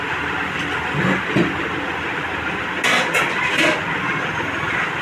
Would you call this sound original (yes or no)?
yes